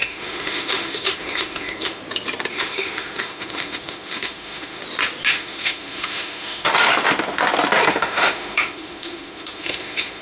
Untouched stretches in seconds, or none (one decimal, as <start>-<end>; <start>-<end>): 2.0-2.5; 4.8-5.3; 6.7-7.9

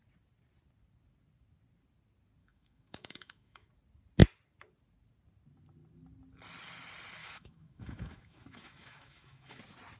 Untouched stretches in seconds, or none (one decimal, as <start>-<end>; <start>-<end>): 0.0-2.4; 3.7-7.2; 9.6-10.0

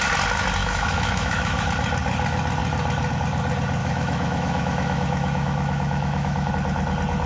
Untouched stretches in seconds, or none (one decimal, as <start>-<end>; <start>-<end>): 0.0-0.6; 1.7-3.8; 6.5-7.3

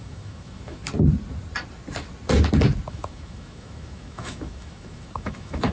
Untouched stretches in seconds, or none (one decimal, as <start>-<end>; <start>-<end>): 0.8-2.9

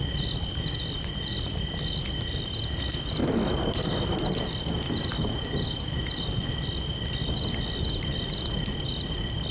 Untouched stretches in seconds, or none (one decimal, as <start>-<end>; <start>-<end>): 0.0-9.5